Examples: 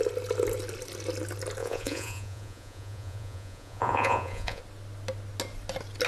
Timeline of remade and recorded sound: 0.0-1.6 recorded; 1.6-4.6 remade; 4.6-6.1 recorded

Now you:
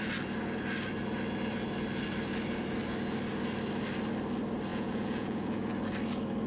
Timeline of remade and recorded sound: 0.0-4.7 recorded; 4.7-5.7 remade; 5.7-6.5 recorded

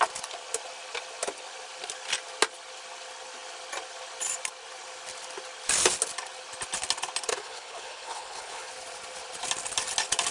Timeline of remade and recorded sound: 0.0-7.3 recorded; 7.3-8.7 remade; 8.7-10.3 recorded

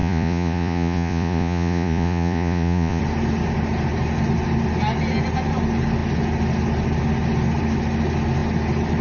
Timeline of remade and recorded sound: 0.0-3.0 remade; 3.0-9.0 recorded

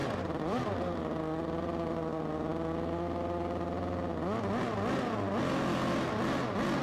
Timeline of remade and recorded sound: 0.0-1.0 remade; 1.0-6.8 recorded

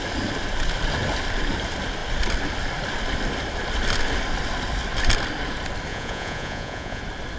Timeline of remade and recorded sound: 0.0-5.9 recorded; 5.9-7.0 remade; 7.0-7.4 recorded